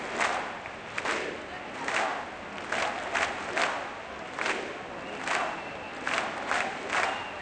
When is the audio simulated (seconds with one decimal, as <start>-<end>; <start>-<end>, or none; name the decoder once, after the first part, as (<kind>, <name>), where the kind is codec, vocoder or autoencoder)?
none